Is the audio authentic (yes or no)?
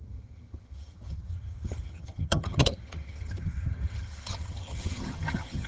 no